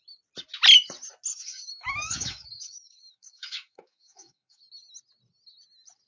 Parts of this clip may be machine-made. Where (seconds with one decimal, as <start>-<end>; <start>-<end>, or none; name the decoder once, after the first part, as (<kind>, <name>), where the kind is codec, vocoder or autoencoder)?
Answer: 1.3-4.6 (autoencoder, DAC-VAE)